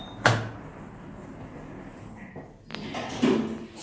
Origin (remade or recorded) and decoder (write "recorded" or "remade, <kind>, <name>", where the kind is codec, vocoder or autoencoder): recorded